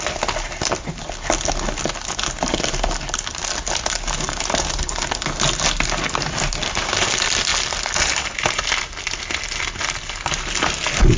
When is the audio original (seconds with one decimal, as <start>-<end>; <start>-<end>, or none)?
0.0-7.5; 9.0-11.2